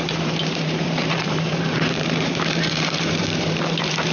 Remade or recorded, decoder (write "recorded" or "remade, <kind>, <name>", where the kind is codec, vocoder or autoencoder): remade, vocoder, BigVGAN v2